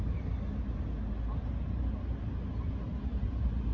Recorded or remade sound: recorded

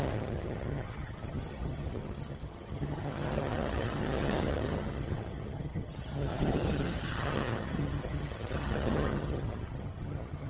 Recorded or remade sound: remade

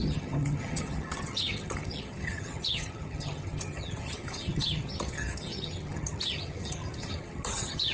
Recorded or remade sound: remade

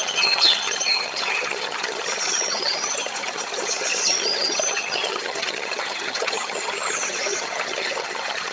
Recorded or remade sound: remade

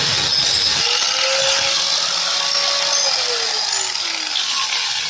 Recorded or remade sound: recorded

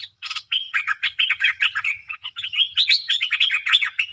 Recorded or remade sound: remade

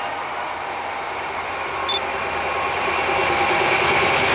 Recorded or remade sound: recorded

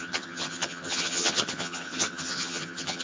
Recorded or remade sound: remade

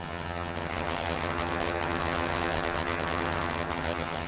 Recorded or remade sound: remade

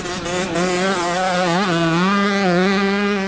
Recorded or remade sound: recorded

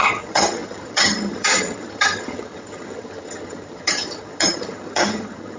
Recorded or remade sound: remade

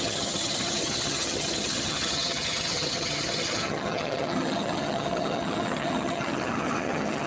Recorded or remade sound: remade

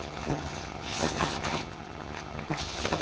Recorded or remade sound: remade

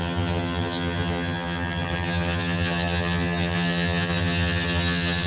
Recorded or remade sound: remade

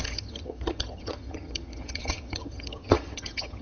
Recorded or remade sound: remade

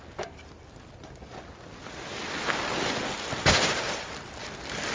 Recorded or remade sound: recorded